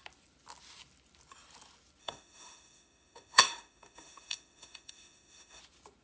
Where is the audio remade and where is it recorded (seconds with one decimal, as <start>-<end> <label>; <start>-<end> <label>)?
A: 0.0-2.0 recorded; 2.0-5.6 remade; 5.6-6.0 recorded